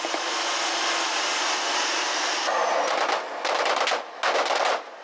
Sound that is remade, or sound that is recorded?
recorded